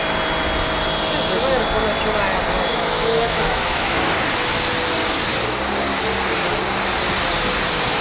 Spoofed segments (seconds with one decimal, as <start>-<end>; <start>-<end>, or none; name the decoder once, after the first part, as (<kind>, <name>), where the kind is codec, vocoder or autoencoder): 2.7-4.0 (autoencoder, DAC-VAE)